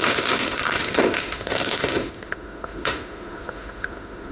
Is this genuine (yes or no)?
no